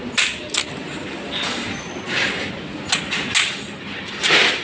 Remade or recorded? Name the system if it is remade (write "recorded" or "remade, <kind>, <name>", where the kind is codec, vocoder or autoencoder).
recorded